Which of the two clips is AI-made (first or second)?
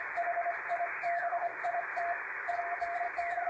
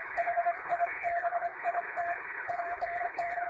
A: second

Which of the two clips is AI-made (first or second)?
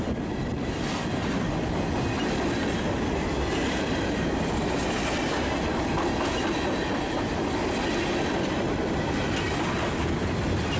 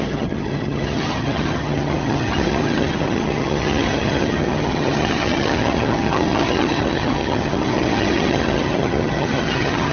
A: second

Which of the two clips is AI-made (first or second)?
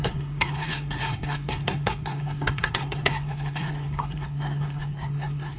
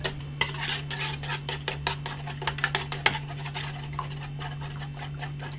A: first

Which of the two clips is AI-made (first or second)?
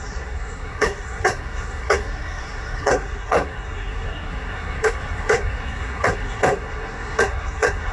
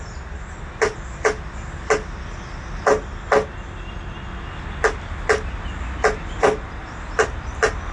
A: first